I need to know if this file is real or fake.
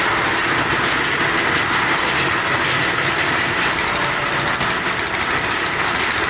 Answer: real